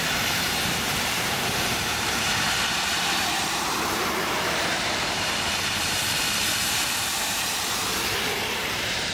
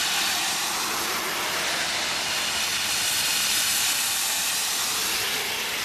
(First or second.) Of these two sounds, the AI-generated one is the first